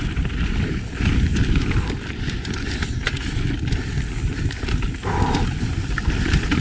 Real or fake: real